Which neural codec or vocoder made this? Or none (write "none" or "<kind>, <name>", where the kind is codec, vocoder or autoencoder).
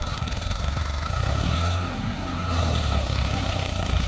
codec, SNAC